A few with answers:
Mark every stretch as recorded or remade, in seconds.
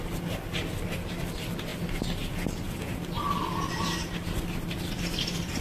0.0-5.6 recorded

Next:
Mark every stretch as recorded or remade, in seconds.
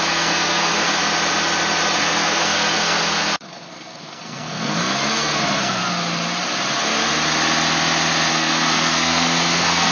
0.0-1.0 remade; 1.0-2.0 recorded; 2.0-5.8 remade; 5.8-8.3 recorded; 8.3-9.9 remade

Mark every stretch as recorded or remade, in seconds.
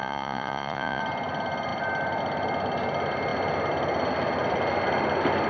0.0-1.0 remade; 1.0-5.5 recorded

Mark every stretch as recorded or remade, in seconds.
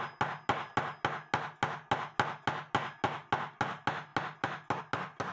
0.0-5.3 recorded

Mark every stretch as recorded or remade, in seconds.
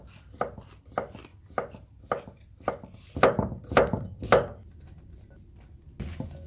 0.0-6.5 recorded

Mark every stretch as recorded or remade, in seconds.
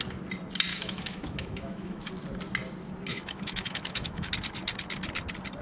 0.0-0.7 recorded; 0.7-2.1 remade; 2.1-3.1 recorded; 3.1-4.3 remade; 4.3-5.6 recorded